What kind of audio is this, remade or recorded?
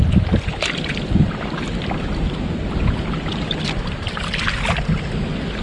recorded